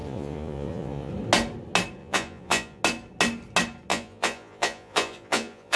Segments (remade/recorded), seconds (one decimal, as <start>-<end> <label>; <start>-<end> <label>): 0.0-1.1 remade; 1.1-2.0 recorded; 2.0-2.8 remade; 2.8-3.9 recorded; 3.9-5.8 remade